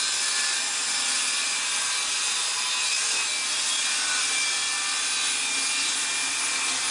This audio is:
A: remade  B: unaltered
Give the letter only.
B